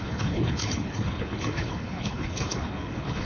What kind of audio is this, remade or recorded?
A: remade